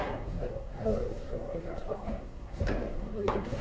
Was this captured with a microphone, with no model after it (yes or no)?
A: no